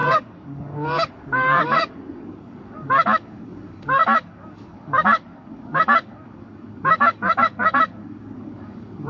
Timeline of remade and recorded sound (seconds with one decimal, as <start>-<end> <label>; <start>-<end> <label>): 0.0-9.1 remade